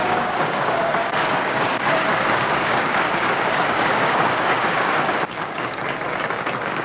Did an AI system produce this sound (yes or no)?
yes